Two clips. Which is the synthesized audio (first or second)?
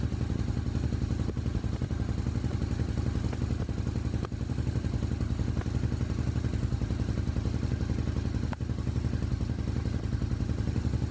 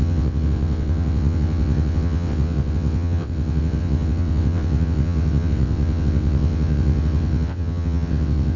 second